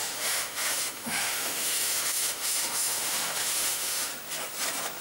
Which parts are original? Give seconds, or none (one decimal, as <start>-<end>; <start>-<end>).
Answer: 4.1-5.0